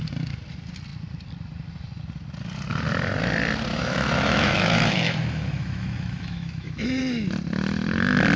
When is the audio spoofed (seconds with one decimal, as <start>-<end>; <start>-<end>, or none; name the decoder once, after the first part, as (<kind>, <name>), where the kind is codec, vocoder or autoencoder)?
3.7-7.0 (autoencoder, DAC-VAE)